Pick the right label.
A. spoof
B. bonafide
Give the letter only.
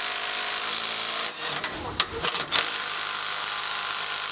B